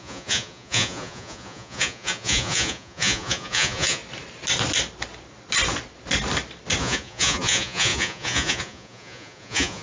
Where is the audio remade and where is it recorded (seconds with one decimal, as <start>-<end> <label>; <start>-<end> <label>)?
0.0-4.0 remade; 4.0-6.8 recorded; 6.8-9.8 remade